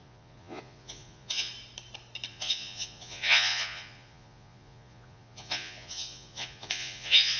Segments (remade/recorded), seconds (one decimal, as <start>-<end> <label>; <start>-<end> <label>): 0.0-1.5 remade; 1.5-2.3 recorded; 2.3-7.4 remade